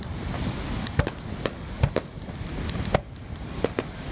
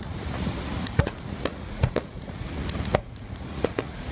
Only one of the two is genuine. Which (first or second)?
first